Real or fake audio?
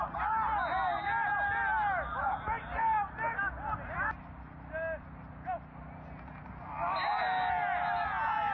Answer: real